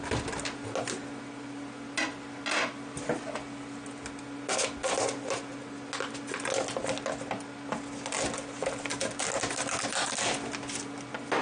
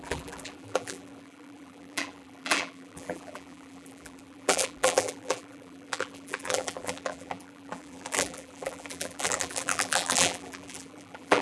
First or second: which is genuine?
first